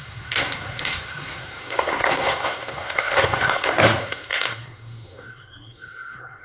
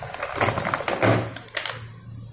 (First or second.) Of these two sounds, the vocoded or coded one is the first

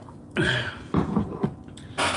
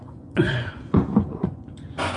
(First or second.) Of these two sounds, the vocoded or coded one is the second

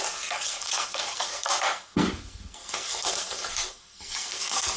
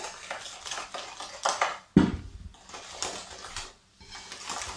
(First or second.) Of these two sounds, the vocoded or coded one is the first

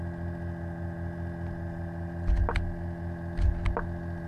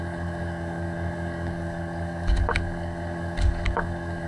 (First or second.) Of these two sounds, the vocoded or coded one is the second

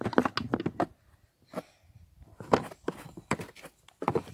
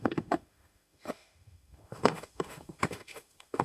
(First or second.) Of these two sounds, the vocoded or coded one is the second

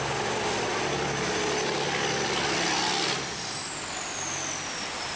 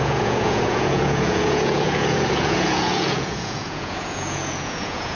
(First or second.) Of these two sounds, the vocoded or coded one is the second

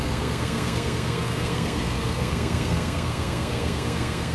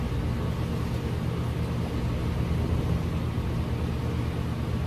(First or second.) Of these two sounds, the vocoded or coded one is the first